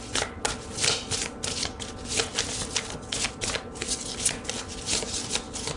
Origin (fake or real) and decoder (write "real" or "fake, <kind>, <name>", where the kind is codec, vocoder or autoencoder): real